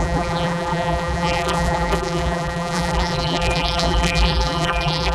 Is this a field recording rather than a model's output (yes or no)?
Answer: no